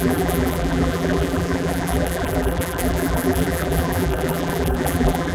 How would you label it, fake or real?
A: fake